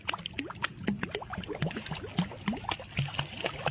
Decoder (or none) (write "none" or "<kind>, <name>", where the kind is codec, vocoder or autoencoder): none